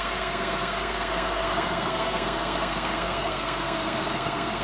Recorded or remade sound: remade